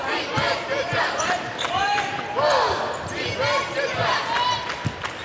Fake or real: real